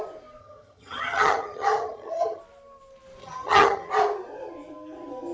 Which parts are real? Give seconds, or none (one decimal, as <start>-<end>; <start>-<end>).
0.0-0.4; 2.4-3.2; 3.9-5.3